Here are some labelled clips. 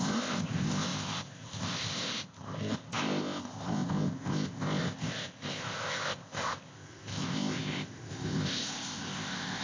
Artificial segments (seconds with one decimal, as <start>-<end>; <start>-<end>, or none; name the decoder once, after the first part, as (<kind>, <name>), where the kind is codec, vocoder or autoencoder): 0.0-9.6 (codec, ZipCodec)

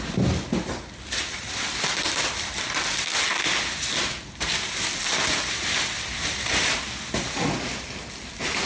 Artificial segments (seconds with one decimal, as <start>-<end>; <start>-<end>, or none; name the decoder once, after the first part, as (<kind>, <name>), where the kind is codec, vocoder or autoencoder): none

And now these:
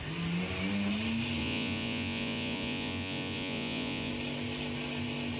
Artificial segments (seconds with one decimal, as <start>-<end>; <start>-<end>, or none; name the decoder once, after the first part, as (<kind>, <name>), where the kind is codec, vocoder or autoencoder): 1.4-4.1 (vocoder, Vocos)